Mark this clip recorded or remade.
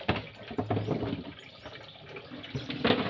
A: recorded